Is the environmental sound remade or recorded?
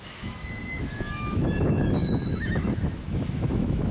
remade